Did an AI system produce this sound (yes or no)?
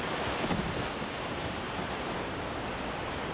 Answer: no